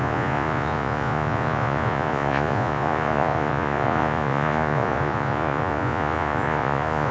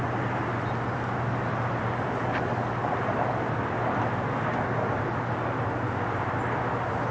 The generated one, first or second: first